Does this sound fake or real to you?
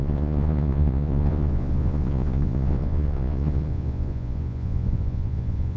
fake